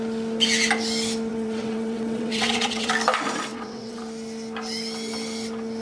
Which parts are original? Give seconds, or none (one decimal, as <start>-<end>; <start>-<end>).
0.0-1.3; 2.9-3.5; 4.0-5.8